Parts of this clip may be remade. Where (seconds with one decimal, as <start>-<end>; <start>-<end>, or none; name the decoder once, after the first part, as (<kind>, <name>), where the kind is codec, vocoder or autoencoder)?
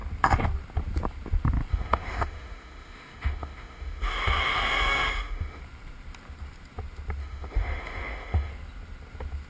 1.7-5.6 (autoencoder, DAC-VAE); 7.2-8.5